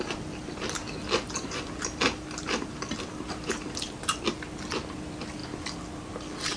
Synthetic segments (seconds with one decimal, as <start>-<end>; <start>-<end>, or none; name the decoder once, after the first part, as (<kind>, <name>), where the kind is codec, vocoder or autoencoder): none

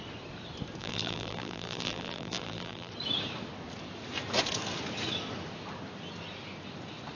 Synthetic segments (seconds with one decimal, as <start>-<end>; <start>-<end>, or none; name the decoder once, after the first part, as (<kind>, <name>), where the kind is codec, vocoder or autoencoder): 0.8-2.9 (vocoder, BigVGAN v2)